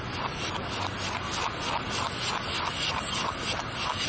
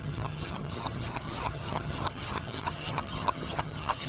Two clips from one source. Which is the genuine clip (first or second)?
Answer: first